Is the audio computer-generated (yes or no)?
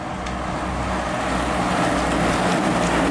no